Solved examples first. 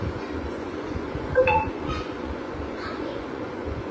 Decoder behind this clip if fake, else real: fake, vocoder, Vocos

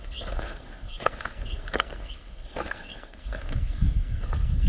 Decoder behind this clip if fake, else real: fake, codec, SNAC